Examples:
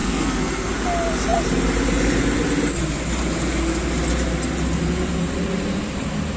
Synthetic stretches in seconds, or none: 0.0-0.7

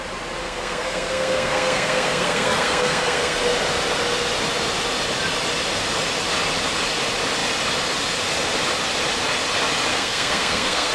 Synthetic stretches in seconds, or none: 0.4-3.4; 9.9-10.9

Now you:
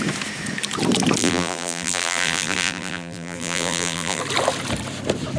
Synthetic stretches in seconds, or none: 1.2-4.2

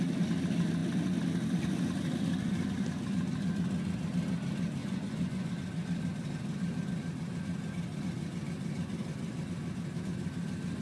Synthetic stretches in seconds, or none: 4.8-5.5